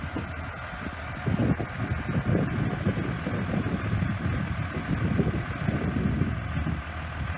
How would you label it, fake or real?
real